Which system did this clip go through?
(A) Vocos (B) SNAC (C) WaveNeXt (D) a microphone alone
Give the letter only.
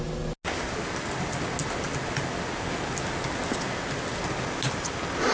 D